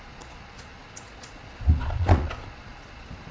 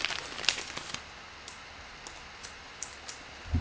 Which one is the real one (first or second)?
second